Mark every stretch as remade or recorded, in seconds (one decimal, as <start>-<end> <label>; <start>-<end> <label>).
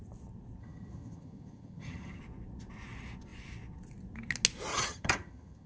0.0-0.6 recorded; 0.6-2.2 remade; 2.2-4.7 recorded; 4.7-5.7 remade